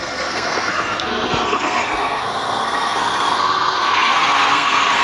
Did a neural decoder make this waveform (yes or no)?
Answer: yes